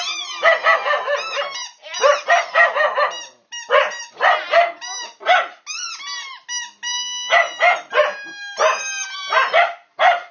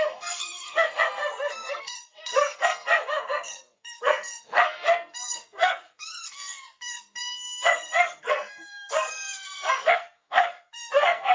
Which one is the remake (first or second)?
second